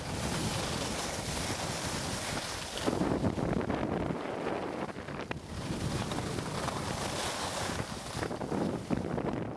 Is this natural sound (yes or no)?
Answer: yes